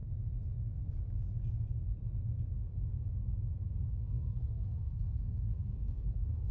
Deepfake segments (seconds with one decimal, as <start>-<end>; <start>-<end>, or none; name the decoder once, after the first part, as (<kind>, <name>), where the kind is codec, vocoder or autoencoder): 3.9-6.5 (codec, SNAC)